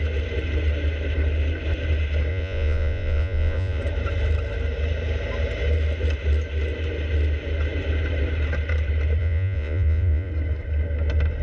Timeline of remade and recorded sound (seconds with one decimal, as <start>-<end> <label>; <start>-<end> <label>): 0.0-2.3 recorded; 2.3-3.8 remade; 3.8-9.2 recorded; 9.2-10.3 remade; 10.3-11.4 recorded